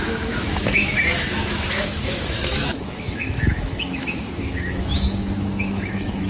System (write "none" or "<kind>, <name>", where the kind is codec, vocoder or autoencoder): autoencoder, DAC-VAE